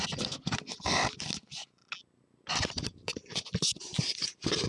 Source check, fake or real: real